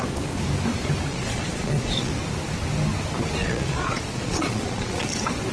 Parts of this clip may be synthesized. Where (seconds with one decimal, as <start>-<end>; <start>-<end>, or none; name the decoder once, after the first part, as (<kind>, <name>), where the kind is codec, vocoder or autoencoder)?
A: 1.1-2.1 (vocoder, Vocos); 3.4-5.1